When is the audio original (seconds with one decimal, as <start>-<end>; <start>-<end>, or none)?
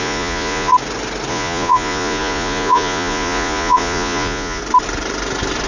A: 0.7-1.3; 4.6-5.7